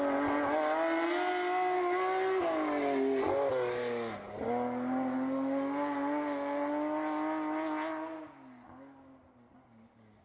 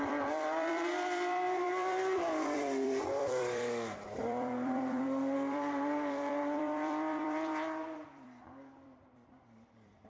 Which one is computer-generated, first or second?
second